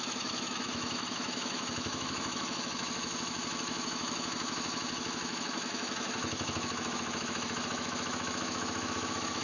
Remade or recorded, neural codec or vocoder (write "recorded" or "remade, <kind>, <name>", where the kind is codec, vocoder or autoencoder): remade, autoencoder, DAC-VAE